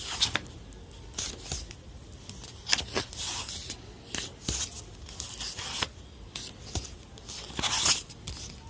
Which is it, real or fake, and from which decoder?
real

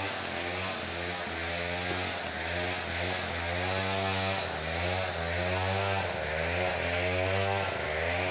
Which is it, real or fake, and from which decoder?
real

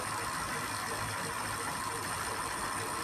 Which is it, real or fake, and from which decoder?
real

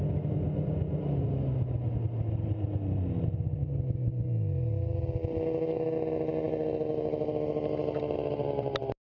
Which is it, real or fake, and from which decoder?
real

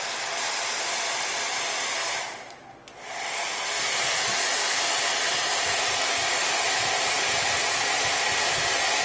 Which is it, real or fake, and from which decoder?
real